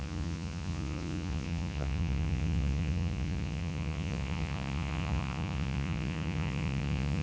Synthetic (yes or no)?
yes